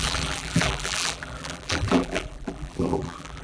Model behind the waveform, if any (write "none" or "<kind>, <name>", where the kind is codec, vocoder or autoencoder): vocoder, BigVGAN v2